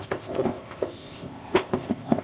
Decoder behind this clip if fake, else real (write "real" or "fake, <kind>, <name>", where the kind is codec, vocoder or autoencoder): fake, codec, ZipCodec